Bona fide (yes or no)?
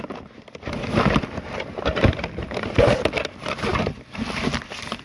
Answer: no